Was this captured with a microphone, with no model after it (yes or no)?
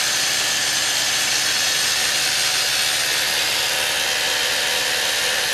yes